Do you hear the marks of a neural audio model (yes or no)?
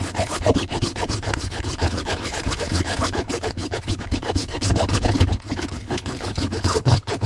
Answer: yes